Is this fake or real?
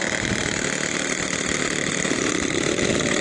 fake